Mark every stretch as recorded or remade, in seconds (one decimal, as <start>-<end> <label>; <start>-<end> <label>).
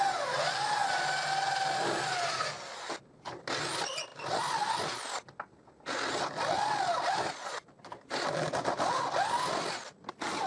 0.0-10.5 recorded